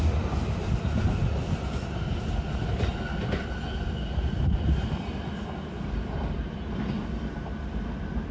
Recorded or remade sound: recorded